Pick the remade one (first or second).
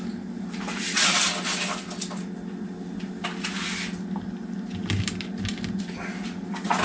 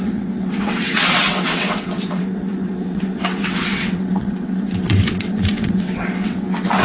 second